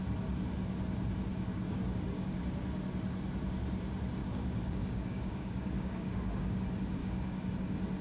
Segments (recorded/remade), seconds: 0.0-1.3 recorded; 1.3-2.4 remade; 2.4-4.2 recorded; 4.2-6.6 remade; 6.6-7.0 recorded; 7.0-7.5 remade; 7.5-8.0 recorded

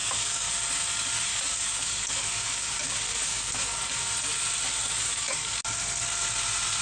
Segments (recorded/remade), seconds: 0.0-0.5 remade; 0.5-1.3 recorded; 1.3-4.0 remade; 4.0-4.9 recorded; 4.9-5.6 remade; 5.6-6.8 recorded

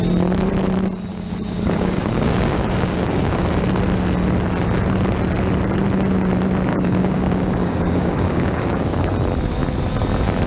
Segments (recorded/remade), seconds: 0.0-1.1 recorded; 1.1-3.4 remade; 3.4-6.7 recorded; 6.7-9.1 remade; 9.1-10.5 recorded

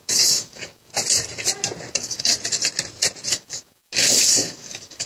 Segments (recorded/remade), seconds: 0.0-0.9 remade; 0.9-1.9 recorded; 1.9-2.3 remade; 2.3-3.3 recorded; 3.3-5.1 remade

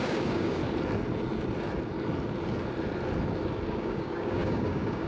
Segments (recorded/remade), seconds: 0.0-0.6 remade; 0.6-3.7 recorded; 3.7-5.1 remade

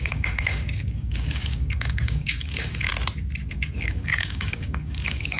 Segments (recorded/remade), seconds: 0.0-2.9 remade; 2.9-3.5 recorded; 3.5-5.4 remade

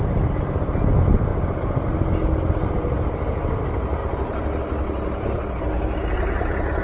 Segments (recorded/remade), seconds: 0.0-6.8 recorded